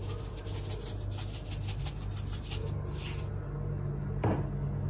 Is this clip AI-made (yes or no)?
no